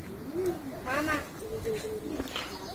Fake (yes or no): no